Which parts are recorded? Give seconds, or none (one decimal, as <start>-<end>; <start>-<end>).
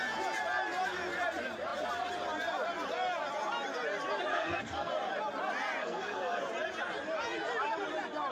0.0-4.3; 4.9-5.8; 6.4-8.3